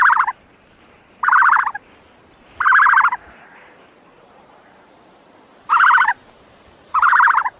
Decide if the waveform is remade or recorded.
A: remade